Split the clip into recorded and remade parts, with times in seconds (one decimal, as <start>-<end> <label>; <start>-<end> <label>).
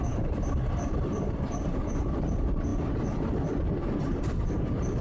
0.0-5.0 recorded